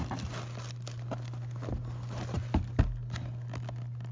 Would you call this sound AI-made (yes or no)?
no